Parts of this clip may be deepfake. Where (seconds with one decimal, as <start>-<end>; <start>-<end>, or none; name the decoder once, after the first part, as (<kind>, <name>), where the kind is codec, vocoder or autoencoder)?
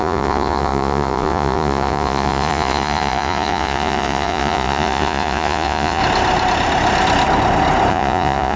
0.0-6.0 (vocoder, Vocos); 7.9-8.6